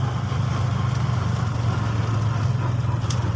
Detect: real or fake real